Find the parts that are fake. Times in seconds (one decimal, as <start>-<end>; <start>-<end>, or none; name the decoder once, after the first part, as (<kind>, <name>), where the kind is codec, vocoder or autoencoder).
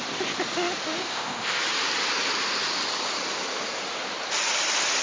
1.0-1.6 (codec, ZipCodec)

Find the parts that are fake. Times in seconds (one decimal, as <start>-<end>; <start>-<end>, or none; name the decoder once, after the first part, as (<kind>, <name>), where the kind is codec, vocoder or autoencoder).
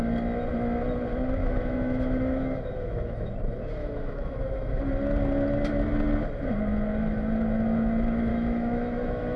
1.4-3.3 (autoencoder, DAC-VAE); 3.8-4.8; 8.3-9.4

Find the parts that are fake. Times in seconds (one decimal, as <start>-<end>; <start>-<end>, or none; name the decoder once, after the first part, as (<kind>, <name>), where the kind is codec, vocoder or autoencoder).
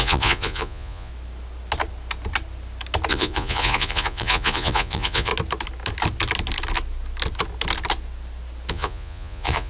0.0-1.1 (vocoder, Vocos); 3.1-5.3; 8.7-9.7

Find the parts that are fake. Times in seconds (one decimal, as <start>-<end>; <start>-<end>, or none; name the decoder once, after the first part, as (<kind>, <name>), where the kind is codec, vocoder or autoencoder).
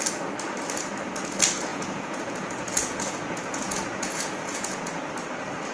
1.7-5.1 (vocoder, Vocos)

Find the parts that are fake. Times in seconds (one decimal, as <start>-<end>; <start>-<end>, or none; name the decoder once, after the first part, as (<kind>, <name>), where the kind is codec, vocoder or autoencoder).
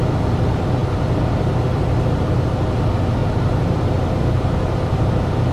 3.2-5.1 (vocoder, BigVGAN v2)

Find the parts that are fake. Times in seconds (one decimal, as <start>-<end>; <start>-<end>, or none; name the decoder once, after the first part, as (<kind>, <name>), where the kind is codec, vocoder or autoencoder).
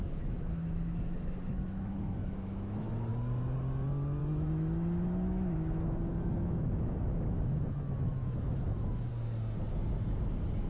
0.0-3.1 (autoencoder, DAC-VAE); 4.2-9.1; 10.0-10.7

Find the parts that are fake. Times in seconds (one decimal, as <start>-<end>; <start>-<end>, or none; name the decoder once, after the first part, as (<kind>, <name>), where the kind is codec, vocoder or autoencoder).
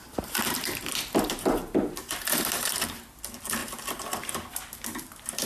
0.0-3.2 (vocoder, BigVGAN v2); 3.6-4.6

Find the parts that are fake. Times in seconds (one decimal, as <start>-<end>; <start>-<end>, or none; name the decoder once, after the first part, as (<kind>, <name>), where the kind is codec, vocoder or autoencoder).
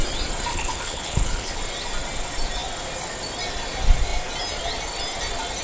0.5-1.6 (codec, HILCodec)